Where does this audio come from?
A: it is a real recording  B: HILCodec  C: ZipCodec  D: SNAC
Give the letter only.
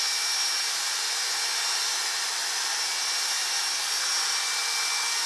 A